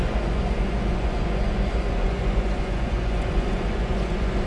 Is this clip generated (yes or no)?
yes